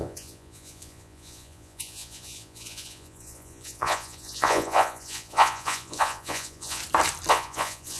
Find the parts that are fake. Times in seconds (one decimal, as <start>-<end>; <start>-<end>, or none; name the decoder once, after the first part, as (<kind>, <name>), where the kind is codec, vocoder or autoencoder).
0.0-6.8 (vocoder, Vocos); 7.3-8.0